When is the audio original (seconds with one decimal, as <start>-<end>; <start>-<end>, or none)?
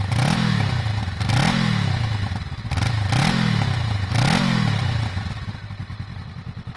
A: 0.0-6.8